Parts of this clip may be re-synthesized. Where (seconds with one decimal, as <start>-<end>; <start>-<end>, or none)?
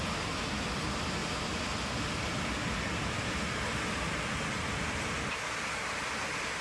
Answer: 1.2-2.4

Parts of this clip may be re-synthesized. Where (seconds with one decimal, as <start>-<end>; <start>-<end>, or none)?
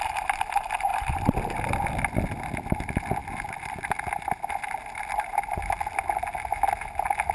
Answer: 0.9-2.3; 3.2-5.8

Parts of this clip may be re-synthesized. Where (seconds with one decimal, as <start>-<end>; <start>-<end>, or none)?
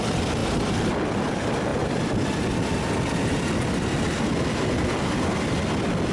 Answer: none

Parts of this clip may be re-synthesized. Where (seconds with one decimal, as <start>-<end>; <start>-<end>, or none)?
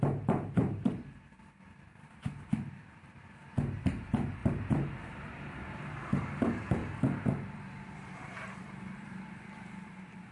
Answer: 0.0-6.8; 7.8-10.3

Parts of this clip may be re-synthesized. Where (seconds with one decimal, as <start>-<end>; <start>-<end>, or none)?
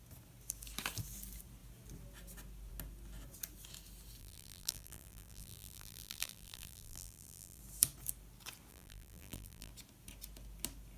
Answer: 4.2-7.6; 8.7-9.7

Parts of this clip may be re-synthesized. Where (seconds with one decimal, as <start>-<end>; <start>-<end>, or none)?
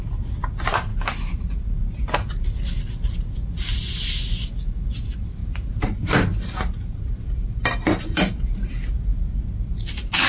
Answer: 5.4-8.7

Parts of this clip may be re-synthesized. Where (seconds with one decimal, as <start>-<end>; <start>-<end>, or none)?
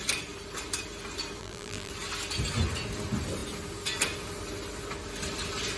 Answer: 1.4-1.9